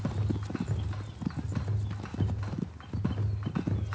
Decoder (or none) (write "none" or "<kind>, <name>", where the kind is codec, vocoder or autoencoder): none